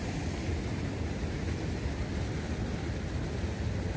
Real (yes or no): yes